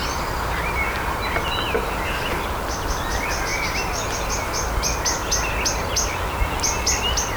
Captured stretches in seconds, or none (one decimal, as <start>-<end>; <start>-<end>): 0.0-7.4